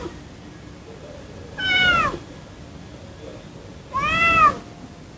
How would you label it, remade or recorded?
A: recorded